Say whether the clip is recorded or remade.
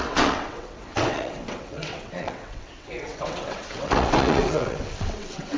remade